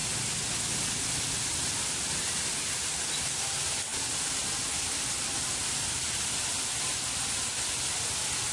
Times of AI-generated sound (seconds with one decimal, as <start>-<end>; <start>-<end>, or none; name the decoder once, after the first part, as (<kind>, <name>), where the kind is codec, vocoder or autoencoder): none